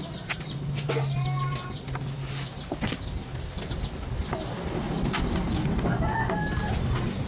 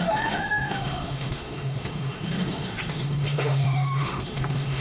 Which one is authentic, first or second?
first